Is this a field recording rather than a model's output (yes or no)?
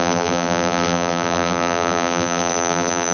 no